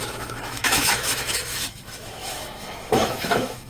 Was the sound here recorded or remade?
remade